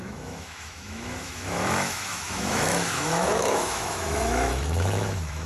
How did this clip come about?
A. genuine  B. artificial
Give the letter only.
B